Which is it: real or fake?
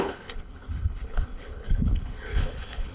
fake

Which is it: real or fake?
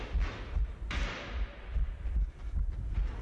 real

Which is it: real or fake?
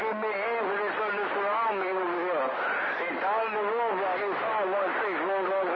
real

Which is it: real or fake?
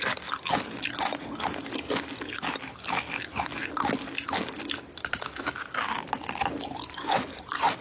real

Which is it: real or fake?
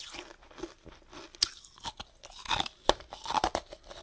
real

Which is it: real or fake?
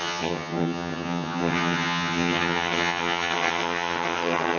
fake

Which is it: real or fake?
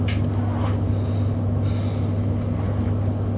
real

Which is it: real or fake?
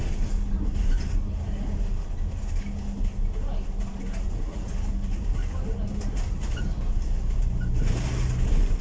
real